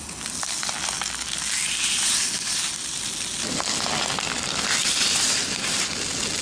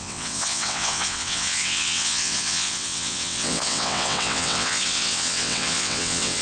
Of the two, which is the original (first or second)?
first